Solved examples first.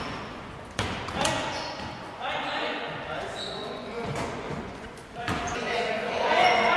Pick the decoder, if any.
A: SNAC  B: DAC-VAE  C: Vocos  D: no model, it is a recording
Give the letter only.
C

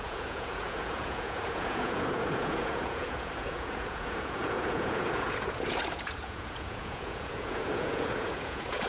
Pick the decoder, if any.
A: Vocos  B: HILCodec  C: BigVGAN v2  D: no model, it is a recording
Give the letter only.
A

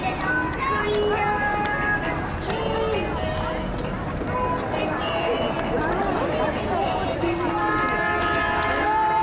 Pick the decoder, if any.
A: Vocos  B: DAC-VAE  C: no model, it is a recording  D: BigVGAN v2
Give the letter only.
C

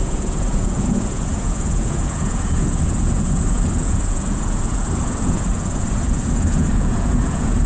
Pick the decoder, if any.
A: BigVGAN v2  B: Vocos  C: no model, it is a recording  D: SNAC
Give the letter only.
B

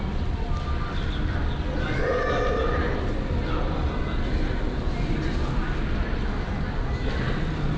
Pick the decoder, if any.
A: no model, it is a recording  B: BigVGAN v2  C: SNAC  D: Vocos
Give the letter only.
A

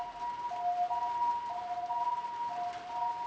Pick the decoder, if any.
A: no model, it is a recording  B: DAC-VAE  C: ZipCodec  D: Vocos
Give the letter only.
A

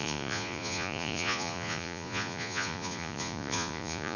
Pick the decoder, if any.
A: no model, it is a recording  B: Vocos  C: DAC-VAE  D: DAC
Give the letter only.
B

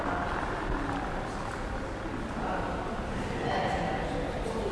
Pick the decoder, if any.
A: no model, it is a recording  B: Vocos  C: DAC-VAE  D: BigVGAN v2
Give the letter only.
A